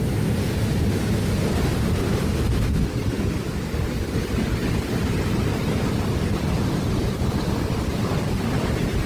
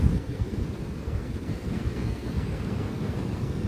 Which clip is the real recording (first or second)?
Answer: first